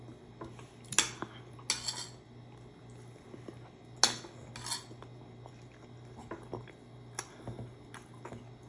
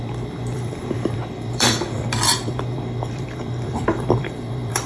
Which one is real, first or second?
first